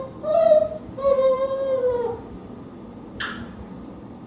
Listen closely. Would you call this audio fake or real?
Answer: fake